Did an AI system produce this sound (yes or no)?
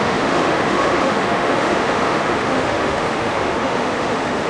yes